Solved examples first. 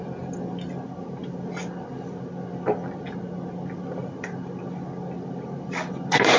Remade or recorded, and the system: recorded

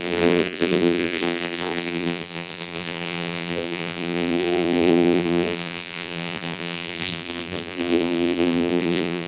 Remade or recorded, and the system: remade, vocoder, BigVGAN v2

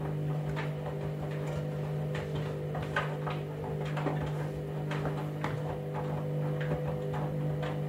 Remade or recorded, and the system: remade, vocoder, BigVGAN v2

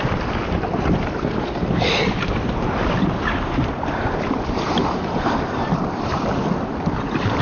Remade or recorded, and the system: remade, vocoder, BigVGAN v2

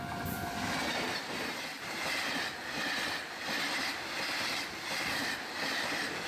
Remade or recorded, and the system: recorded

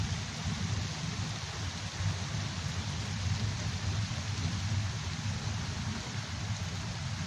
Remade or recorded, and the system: recorded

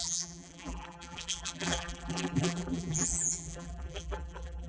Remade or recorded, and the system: remade, vocoder, BigVGAN v2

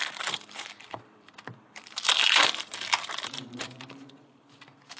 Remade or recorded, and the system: remade, vocoder, BigVGAN v2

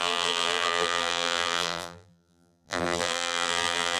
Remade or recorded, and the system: remade, vocoder, BigVGAN v2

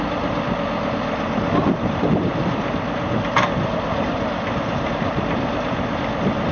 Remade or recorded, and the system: remade, vocoder, BigVGAN v2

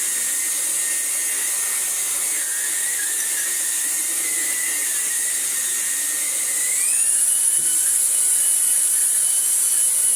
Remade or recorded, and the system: recorded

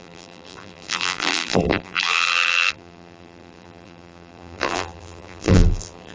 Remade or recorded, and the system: remade, vocoder, BigVGAN v2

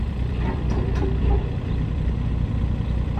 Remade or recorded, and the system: remade, vocoder, BigVGAN v2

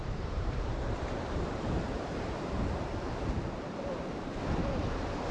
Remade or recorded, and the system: remade, vocoder, BigVGAN v2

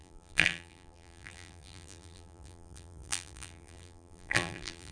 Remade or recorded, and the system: remade, vocoder, BigVGAN v2